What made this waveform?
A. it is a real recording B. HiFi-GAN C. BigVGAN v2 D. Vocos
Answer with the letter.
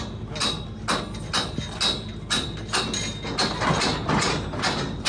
A